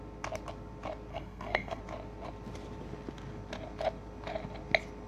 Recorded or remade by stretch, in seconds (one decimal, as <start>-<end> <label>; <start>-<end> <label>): 0.0-1.1 recorded; 1.1-1.8 remade; 1.8-5.1 recorded